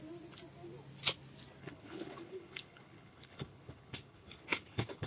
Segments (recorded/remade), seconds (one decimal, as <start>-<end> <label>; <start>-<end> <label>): 0.0-1.6 recorded; 1.6-5.1 remade